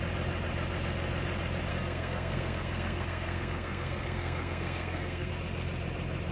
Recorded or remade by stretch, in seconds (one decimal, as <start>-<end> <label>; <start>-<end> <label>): 0.0-1.7 recorded; 1.7-5.3 remade; 5.3-6.3 recorded